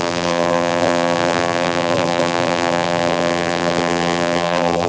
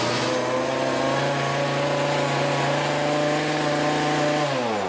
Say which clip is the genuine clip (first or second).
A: second